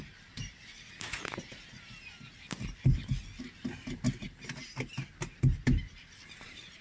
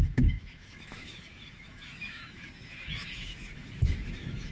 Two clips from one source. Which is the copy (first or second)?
second